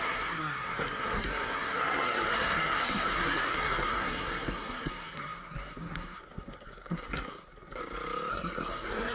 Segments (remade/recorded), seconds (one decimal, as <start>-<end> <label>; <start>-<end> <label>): 0.0-7.8 remade; 7.8-8.3 recorded; 8.3-9.1 remade